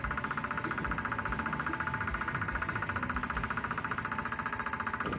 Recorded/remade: recorded